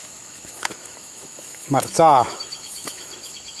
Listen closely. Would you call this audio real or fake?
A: fake